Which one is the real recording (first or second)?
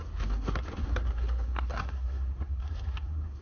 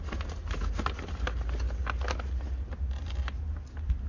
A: second